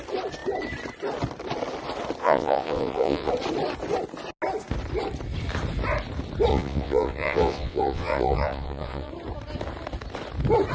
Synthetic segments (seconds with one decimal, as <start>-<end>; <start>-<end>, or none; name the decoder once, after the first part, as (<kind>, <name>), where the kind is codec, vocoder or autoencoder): 2.2-3.3 (vocoder, WaveNeXt); 6.5-9.1